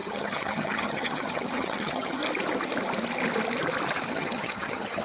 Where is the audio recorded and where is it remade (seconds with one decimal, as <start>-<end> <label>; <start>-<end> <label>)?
0.0-2.2 remade; 2.2-4.1 recorded; 4.1-5.0 remade